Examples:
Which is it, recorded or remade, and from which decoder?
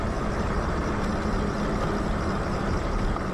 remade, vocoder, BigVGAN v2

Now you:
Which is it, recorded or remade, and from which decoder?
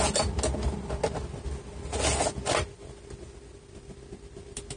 recorded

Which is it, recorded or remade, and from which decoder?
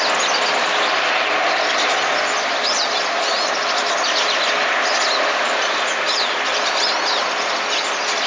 recorded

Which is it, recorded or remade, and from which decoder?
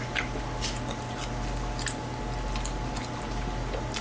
recorded